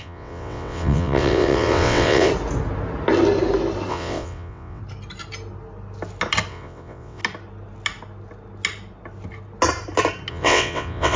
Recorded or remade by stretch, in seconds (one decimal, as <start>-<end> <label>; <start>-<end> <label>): 0.0-2.3 remade; 2.3-3.9 recorded; 3.9-4.8 remade; 4.8-6.5 recorded; 6.5-7.2 remade; 7.2-10.3 recorded; 10.3-11.2 remade